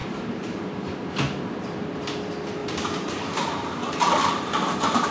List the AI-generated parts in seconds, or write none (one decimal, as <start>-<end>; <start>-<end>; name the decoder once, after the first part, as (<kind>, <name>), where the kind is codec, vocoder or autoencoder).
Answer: 0.0-0.7 (vocoder, BigVGAN v2); 2.6-5.1